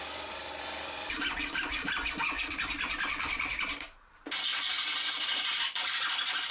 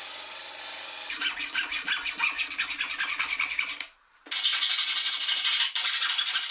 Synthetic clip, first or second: first